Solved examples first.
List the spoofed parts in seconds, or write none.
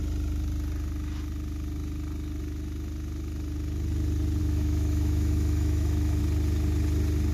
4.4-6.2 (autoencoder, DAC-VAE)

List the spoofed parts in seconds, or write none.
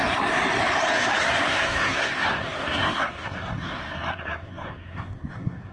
1.4-5.7 (codec, SNAC)